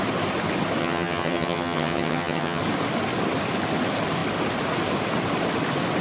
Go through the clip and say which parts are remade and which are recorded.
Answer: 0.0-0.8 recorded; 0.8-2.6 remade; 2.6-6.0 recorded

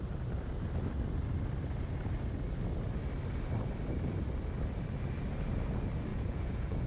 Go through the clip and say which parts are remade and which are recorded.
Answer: 0.0-6.1 recorded; 6.1-6.9 remade

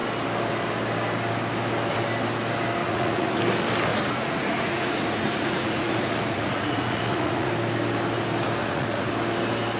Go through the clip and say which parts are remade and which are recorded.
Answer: 0.0-2.8 recorded; 2.8-3.4 remade; 3.4-3.9 recorded; 3.9-7.5 remade; 7.5-8.6 recorded; 8.6-9.1 remade; 9.1-9.8 recorded